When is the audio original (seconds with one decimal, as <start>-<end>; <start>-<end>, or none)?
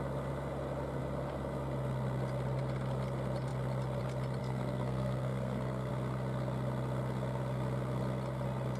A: 0.0-4.4; 5.9-8.8